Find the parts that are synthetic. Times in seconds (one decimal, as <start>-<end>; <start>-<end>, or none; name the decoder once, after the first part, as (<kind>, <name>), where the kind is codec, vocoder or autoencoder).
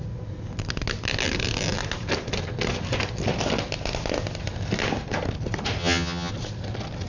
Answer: 5.8-6.3 (vocoder, HiFi-GAN)